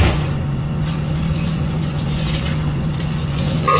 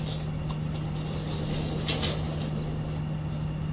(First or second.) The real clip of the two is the second